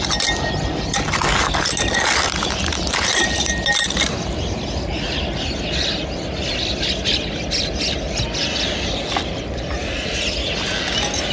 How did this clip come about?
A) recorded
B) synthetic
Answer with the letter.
A